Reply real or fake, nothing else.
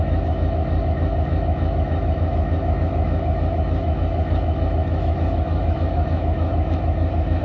fake